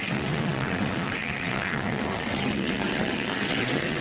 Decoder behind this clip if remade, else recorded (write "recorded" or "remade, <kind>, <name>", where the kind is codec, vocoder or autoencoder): remade, vocoder, WaveNeXt